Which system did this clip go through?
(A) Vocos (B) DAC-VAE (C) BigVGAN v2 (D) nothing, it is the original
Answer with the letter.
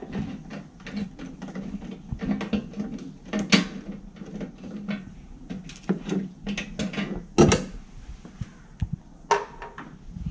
D